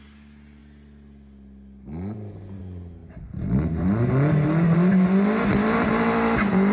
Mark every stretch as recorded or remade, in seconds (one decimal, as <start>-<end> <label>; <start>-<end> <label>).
0.0-6.7 recorded